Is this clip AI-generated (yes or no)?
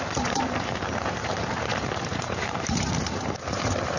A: yes